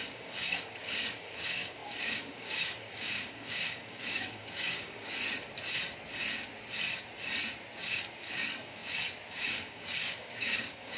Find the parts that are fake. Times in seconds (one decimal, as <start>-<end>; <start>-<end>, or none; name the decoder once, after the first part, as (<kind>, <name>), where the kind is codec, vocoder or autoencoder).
0.0-5.2 (codec, DAC); 7.9-8.8; 9.3-11.0